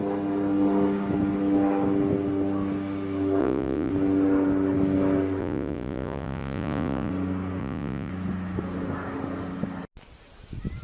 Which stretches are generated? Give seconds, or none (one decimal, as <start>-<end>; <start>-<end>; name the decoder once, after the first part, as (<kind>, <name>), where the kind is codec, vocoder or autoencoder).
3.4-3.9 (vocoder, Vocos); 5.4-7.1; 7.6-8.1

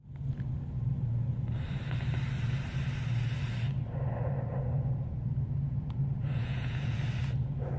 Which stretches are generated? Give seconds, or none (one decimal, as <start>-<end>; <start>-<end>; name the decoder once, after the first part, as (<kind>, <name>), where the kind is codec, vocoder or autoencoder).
4.5-7.0 (vocoder, Vocos)

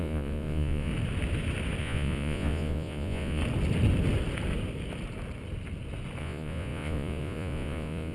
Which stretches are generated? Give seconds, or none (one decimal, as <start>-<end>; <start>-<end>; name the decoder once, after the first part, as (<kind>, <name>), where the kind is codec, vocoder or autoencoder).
0.0-0.9 (vocoder, Vocos); 1.8-3.4; 6.2-8.1